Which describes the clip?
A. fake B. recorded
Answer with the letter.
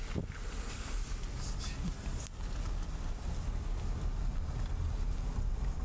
B